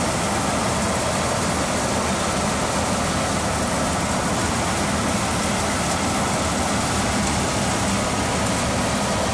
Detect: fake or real real